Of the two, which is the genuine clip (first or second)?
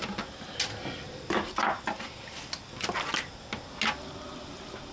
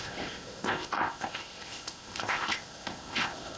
first